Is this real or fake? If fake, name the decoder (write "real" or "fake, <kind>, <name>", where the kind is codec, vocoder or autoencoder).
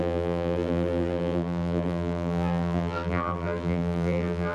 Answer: fake, vocoder, BigVGAN v2